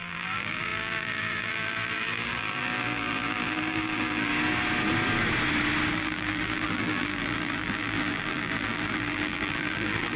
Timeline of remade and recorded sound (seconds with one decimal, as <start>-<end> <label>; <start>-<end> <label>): 0.0-4.3 remade; 4.3-5.9 recorded; 5.9-10.2 remade